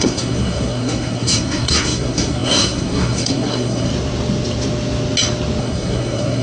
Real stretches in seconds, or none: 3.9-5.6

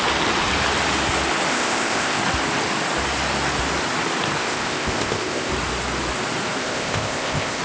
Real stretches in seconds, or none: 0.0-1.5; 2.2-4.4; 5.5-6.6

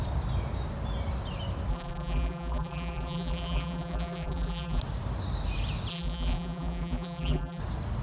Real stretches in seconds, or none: 0.0-1.7; 4.8-5.9; 7.6-8.0